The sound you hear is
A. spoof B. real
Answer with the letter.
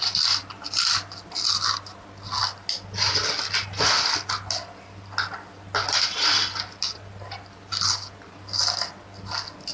B